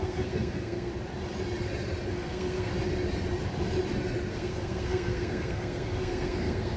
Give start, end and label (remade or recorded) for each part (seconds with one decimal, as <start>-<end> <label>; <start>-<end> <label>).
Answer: 0.0-0.9 remade; 0.9-2.1 recorded; 2.1-2.7 remade; 2.7-4.3 recorded; 4.3-6.8 remade